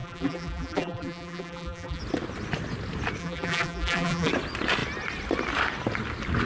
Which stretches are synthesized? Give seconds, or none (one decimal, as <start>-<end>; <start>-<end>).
0.0-2.0; 3.2-4.3